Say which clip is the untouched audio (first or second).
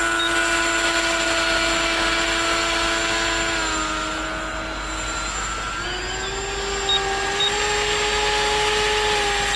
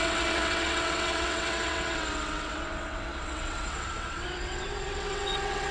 first